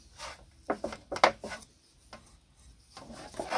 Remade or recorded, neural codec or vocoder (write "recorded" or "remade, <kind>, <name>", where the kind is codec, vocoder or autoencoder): recorded